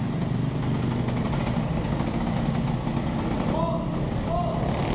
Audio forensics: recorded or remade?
recorded